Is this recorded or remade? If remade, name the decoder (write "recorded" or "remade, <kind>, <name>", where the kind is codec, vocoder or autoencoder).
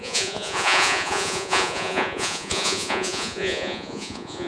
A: remade, vocoder, Vocos